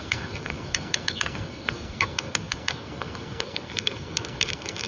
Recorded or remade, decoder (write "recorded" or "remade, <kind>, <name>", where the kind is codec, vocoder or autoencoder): remade, codec, SNAC